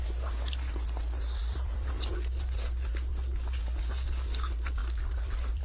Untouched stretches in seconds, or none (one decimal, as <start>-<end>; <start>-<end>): 0.0-1.4; 2.1-4.8